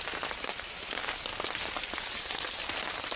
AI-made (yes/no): no